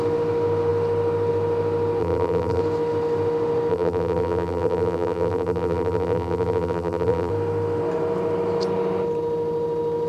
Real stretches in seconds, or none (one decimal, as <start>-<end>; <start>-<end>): 0.0-2.0; 2.6-3.7; 7.3-10.1